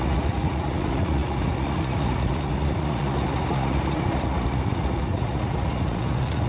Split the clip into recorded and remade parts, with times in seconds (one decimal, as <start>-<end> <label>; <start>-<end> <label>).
0.0-6.5 remade